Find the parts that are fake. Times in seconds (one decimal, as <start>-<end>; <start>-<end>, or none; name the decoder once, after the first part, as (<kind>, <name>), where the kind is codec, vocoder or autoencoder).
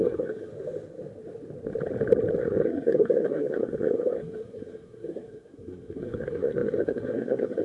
0.0-0.5 (codec, SNAC); 2.4-7.6